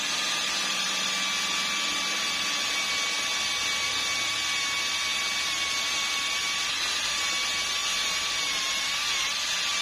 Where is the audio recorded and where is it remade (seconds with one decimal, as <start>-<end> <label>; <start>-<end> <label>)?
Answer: 0.0-9.8 recorded